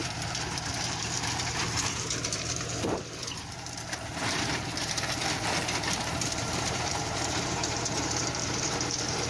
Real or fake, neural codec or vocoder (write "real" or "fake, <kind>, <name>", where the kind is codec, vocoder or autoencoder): fake, vocoder, BigVGAN v2